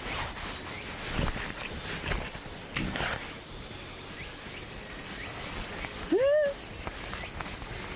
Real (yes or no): yes